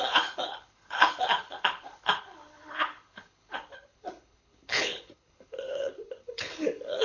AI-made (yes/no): yes